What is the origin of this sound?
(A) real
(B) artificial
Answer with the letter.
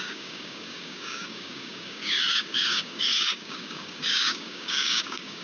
B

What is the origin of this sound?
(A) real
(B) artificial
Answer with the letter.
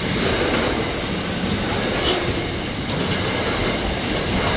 A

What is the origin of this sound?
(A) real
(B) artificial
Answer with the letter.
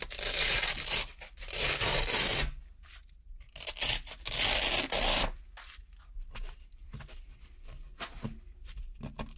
A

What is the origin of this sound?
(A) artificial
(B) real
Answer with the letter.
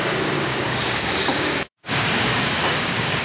A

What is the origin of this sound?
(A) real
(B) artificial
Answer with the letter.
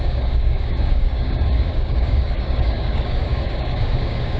B